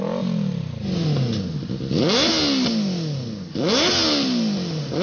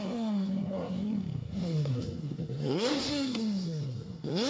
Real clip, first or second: first